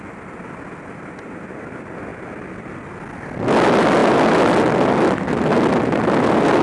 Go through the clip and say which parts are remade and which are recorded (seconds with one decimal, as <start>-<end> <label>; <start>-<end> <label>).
0.0-6.6 recorded